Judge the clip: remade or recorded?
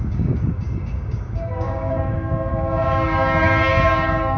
remade